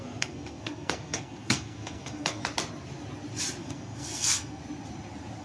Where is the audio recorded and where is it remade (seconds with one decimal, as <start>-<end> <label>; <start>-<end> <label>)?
0.0-2.4 remade; 2.4-3.6 recorded; 3.6-4.6 remade; 4.6-5.4 recorded